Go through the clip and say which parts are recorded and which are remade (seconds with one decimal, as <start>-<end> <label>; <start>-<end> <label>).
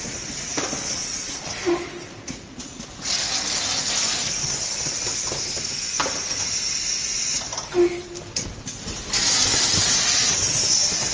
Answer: 0.0-0.8 recorded; 0.8-1.5 remade; 1.5-11.1 recorded